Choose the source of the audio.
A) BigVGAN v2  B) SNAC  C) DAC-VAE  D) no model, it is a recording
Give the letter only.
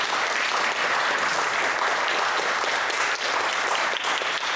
A